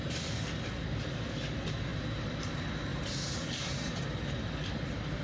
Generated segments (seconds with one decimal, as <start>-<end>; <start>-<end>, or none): 1.9-2.5; 2.9-4.0